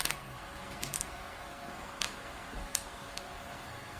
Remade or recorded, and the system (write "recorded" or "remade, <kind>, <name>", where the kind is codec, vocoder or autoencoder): remade, codec, SNAC